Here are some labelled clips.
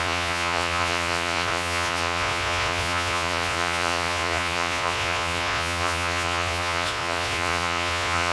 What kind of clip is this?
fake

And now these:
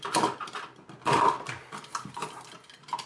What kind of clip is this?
real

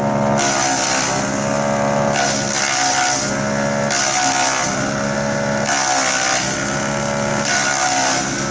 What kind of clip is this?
real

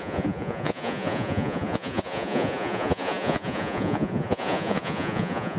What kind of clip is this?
fake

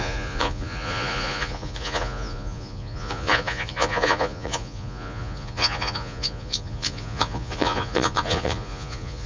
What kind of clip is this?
fake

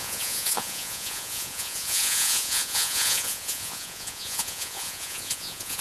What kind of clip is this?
fake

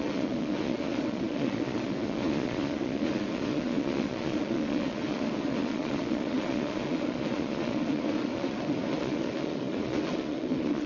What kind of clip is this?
fake